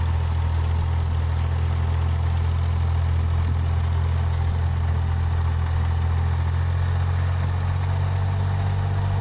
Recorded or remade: recorded